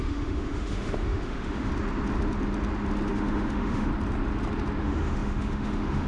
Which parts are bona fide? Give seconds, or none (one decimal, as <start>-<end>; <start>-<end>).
1.7-3.1; 3.9-4.8